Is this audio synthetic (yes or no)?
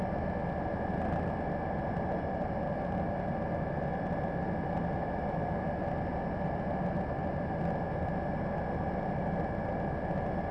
no